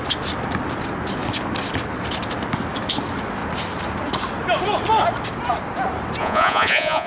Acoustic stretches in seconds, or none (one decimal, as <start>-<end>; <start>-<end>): 0.0-6.2